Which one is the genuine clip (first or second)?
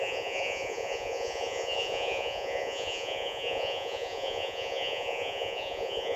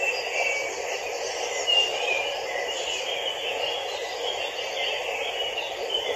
second